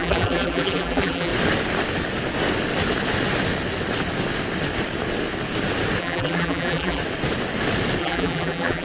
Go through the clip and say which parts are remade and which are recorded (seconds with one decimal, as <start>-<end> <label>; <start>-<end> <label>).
0.0-1.3 remade; 1.3-6.0 recorded; 6.0-7.0 remade; 7.0-8.0 recorded; 8.0-8.8 remade

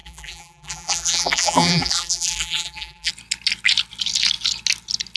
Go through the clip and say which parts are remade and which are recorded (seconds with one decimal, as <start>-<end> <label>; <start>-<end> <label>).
0.0-3.1 remade; 3.1-5.2 recorded

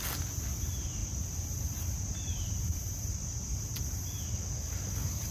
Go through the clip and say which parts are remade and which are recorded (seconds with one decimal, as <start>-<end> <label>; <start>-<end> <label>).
0.0-1.0 recorded; 1.0-4.2 remade; 4.2-5.3 recorded

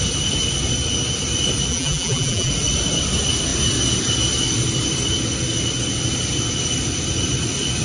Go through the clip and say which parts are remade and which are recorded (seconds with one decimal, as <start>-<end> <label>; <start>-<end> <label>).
0.0-1.7 recorded; 1.7-2.5 remade; 2.5-7.8 recorded

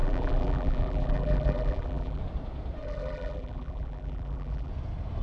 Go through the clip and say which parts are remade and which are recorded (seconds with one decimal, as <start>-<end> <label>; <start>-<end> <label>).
0.0-2.2 remade; 2.2-2.8 recorded; 2.8-4.7 remade; 4.7-5.2 recorded